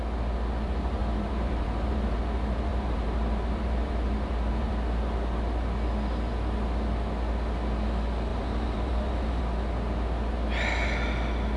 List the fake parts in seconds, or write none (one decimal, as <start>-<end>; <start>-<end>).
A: 1.0-2.2; 2.7-4.7; 8.3-9.4